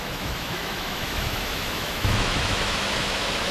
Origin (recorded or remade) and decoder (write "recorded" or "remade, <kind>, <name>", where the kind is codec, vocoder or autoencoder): remade, autoencoder, DAC-VAE